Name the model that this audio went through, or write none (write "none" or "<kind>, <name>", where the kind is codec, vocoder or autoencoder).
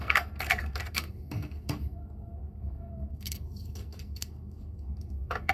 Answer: codec, SNAC